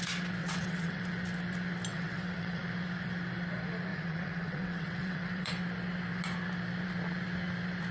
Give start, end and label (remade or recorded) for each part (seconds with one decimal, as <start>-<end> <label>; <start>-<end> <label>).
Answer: 0.0-0.4 recorded; 0.4-1.0 remade; 1.0-1.9 recorded; 1.9-2.6 remade; 2.6-3.9 recorded; 3.9-5.6 remade; 5.6-7.9 recorded

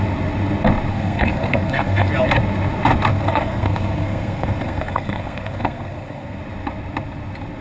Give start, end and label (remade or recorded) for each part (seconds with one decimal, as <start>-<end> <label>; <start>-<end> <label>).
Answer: 0.0-0.9 recorded; 0.9-2.1 remade; 2.1-3.1 recorded; 3.1-6.4 remade; 6.4-7.6 recorded

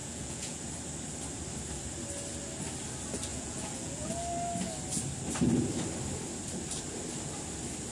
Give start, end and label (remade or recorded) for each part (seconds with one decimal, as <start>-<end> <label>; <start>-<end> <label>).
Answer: 0.0-0.6 remade; 0.6-3.3 recorded; 3.3-4.1 remade; 4.1-7.9 recorded